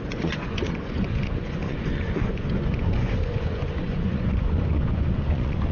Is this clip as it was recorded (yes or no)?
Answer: no